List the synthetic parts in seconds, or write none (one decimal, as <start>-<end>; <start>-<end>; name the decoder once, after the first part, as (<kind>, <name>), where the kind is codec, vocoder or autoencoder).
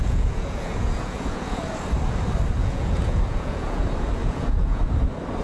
0.0-1.7 (vocoder, Vocos); 2.6-3.8; 4.2-4.8